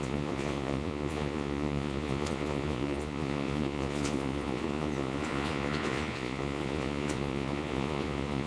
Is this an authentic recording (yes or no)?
no